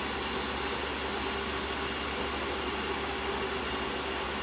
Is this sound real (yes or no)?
yes